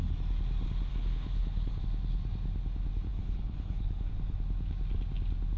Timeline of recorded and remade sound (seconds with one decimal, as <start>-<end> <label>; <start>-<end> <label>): 0.0-0.9 recorded; 0.9-1.8 remade; 1.8-3.1 recorded; 3.1-4.1 remade; 4.1-5.6 recorded